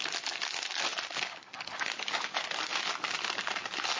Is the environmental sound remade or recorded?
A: recorded